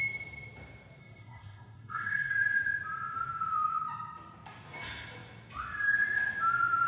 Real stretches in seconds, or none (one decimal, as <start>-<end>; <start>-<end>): 0.0-1.0; 2.3-6.9